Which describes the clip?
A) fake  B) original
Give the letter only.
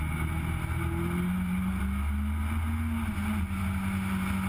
B